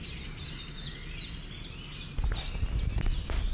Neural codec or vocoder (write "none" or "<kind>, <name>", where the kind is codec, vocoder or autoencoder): none